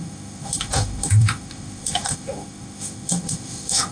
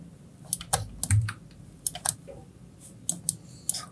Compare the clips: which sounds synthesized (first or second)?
first